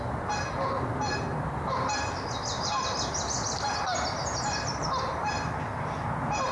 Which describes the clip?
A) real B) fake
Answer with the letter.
A